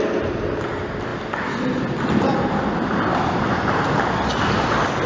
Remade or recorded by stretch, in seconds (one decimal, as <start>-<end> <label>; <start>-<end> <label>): 0.0-5.1 recorded